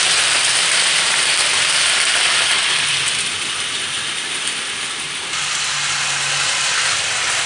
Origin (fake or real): real